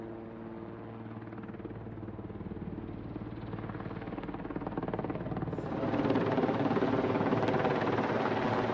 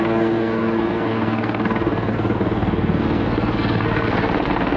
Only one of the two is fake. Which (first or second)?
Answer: second